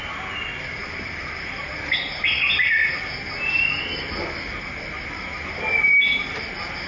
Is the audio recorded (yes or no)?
yes